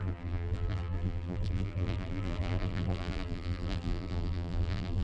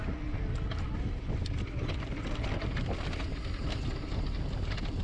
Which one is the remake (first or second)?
first